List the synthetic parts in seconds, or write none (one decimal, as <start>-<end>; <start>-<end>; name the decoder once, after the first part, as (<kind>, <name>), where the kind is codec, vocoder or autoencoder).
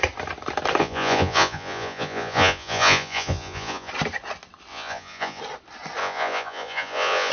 0.8-3.9 (vocoder, Vocos); 4.7-5.4; 6.0-7.3